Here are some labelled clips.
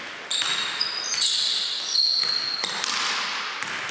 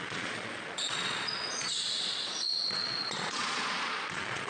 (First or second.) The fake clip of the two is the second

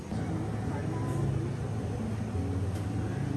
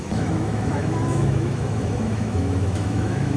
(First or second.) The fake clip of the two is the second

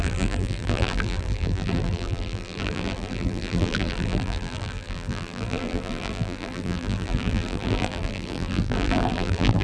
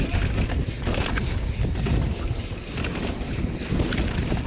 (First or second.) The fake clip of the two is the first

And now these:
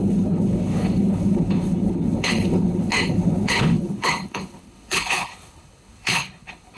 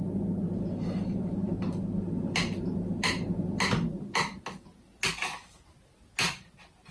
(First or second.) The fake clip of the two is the first